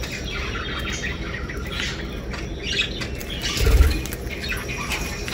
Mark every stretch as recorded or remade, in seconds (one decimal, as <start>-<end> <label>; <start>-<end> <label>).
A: 0.0-5.3 recorded

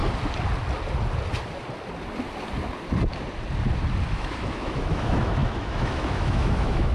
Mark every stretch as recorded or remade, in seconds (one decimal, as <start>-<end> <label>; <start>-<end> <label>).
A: 0.0-4.1 recorded; 4.1-6.9 remade

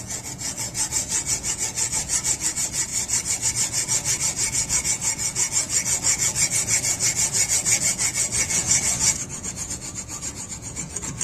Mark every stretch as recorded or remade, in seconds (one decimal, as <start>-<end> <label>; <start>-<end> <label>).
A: 0.0-2.9 remade; 2.9-3.5 recorded; 3.5-11.2 remade

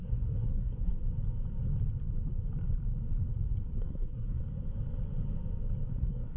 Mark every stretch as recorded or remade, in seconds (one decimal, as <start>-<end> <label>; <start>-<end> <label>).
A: 0.0-0.9 remade; 0.9-3.8 recorded; 3.8-4.4 remade; 4.4-5.9 recorded; 5.9-6.4 remade